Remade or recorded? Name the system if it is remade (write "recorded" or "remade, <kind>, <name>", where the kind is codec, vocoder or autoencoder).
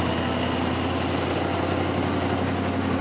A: recorded